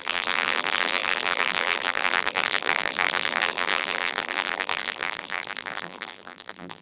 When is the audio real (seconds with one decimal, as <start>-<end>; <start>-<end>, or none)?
none

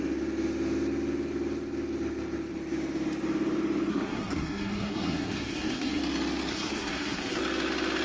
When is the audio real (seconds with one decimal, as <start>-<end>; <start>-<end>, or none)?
0.0-3.9; 6.0-6.5; 7.4-8.0

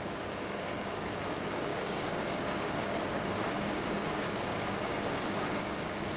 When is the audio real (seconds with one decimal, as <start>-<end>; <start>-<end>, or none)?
none